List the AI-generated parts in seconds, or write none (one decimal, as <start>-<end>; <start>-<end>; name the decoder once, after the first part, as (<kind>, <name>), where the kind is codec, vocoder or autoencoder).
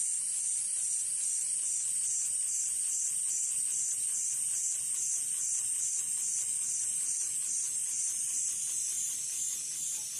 none